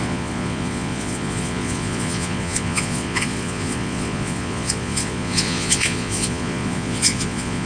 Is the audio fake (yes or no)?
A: yes